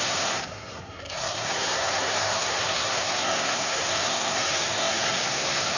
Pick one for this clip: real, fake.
fake